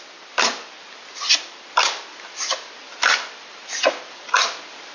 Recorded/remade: recorded